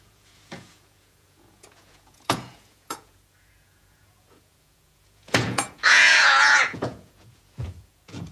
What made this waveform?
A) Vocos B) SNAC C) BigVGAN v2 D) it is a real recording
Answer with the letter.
A